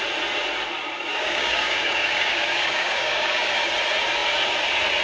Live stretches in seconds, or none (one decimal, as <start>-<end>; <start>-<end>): 0.0-1.1; 3.5-5.0